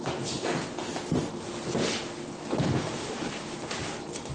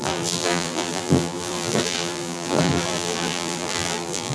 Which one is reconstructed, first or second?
second